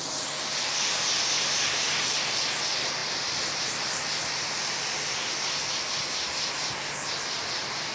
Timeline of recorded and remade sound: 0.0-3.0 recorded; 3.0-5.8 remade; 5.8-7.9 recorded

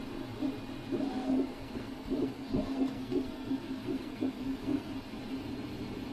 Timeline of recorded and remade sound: 0.0-1.2 recorded; 1.2-4.9 remade; 4.9-6.1 recorded